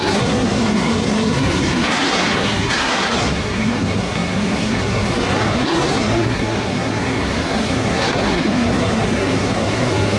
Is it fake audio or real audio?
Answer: fake